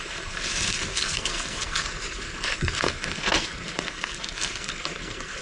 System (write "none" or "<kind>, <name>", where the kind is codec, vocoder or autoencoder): codec, SNAC